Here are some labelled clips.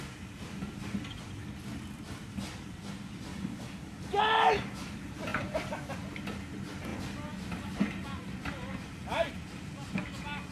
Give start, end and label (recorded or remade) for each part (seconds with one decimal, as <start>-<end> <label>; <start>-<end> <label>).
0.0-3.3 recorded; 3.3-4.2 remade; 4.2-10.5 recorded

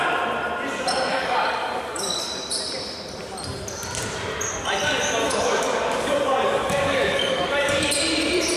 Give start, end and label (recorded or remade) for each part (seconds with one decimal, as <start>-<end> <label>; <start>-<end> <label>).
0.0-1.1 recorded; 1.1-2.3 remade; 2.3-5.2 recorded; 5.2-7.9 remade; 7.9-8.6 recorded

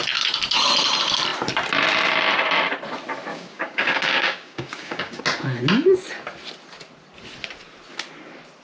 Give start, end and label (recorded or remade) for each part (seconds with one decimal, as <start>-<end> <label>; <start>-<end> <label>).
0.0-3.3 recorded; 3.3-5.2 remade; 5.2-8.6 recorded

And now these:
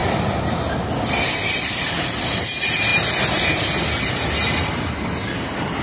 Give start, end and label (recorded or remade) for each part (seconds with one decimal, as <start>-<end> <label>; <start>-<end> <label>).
0.0-5.8 recorded

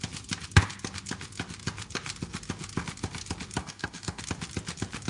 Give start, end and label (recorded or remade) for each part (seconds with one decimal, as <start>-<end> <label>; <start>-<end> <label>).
0.0-3.6 recorded; 3.6-4.2 remade; 4.2-5.1 recorded

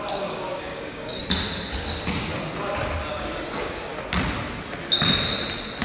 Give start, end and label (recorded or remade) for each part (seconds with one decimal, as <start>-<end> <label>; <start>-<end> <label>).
0.0-1.2 remade; 1.2-3.1 recorded; 3.1-3.9 remade; 3.9-5.8 recorded